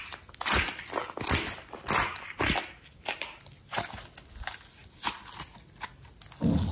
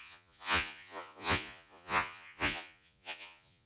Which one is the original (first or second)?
first